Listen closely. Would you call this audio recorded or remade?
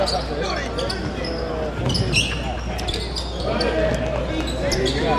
recorded